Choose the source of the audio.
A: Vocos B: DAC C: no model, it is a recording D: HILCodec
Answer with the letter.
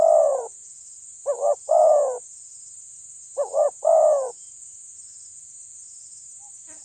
A